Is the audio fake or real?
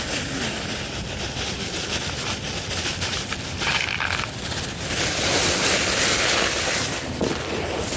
fake